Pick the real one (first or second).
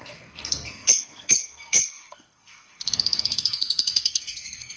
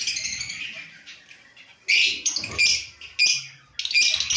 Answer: second